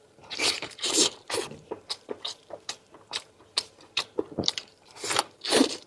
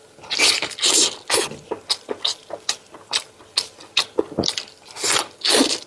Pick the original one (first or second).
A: second